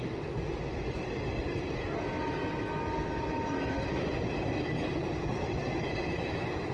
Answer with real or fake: real